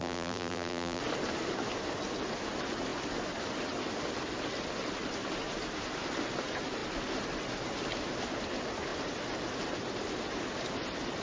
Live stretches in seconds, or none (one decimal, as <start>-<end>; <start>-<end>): 1.0-11.2